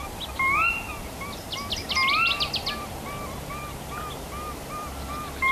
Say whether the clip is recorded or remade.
recorded